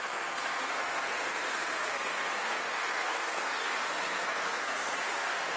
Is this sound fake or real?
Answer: fake